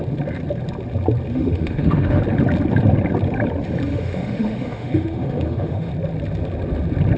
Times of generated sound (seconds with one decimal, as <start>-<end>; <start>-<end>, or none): 1.3-2.2; 3.9-5.9